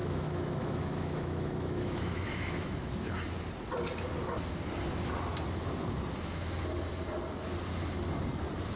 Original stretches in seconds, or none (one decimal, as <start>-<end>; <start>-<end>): 3.1-8.8